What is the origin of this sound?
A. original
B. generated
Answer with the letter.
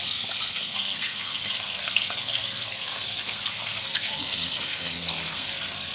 B